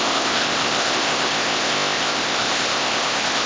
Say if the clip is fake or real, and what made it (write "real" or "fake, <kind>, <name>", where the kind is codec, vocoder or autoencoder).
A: fake, codec, ZipCodec